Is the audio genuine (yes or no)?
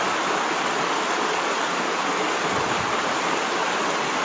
yes